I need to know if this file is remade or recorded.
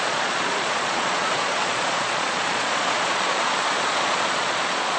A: remade